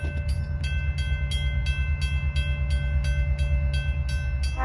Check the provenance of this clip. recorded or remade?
recorded